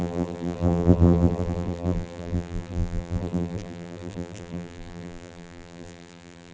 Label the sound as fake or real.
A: fake